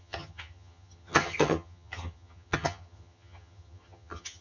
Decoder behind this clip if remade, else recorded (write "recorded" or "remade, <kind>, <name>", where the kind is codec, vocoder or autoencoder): remade, vocoder, HiFi-GAN